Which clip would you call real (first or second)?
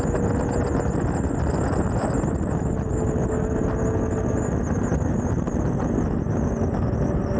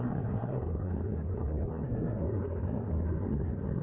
first